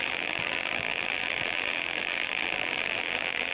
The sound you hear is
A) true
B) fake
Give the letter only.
B